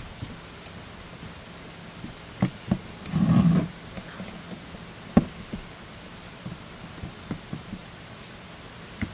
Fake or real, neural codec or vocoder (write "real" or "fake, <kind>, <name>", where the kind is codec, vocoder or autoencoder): real